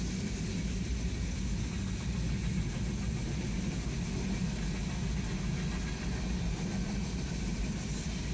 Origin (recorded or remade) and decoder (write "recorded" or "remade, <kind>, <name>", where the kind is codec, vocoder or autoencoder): recorded